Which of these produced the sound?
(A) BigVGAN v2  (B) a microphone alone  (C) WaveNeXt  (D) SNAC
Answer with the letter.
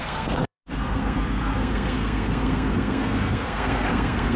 D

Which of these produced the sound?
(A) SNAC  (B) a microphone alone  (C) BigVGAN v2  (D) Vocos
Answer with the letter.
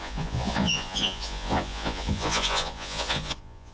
D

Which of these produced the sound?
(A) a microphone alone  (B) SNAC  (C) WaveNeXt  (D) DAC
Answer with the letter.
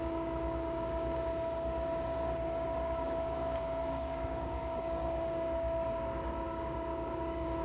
D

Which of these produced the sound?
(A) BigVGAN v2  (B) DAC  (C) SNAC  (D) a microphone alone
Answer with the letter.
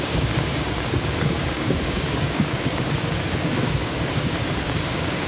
B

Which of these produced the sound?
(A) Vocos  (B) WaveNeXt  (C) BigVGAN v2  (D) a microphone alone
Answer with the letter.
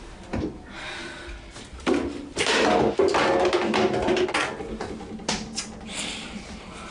D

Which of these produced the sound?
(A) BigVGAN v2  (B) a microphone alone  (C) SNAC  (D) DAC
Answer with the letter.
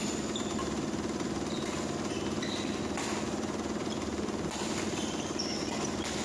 B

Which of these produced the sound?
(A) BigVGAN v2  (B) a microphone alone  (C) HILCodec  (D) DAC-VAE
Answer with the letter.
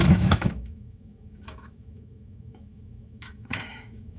D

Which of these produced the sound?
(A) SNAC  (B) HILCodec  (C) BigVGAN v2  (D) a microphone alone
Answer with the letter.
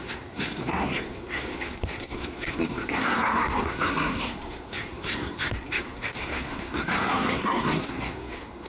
A